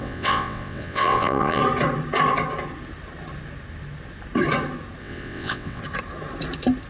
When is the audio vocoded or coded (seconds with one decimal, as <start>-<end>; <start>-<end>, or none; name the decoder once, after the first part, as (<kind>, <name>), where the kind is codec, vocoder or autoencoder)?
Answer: 0.0-1.6 (vocoder, WaveNeXt); 5.0-5.8